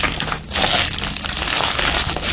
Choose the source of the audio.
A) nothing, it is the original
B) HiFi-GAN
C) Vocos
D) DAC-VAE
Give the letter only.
A